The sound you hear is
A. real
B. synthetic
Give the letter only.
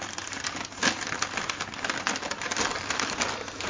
A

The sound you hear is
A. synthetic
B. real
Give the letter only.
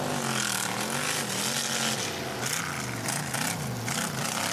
B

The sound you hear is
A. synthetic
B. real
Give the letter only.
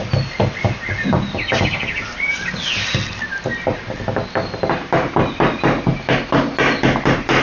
B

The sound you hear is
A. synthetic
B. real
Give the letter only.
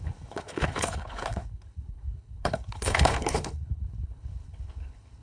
A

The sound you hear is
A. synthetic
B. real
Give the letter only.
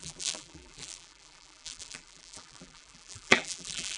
A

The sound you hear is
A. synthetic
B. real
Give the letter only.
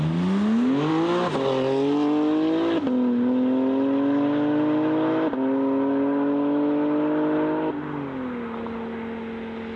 B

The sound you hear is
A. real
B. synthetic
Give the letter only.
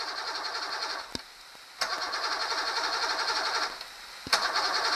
A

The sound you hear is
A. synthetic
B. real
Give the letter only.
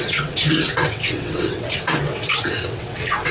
A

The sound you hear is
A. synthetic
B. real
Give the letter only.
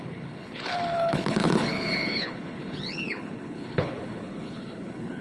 A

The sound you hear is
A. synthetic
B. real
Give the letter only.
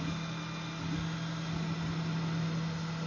B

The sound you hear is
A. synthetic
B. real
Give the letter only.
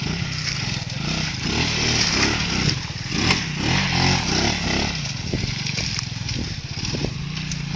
B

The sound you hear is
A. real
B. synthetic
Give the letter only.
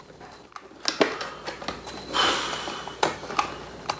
A